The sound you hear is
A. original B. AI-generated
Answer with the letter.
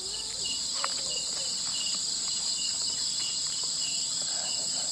B